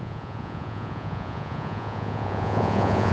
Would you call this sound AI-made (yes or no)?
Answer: yes